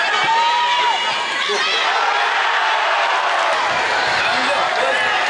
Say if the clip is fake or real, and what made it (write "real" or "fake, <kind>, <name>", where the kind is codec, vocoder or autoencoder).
real